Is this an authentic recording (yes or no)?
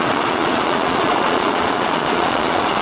no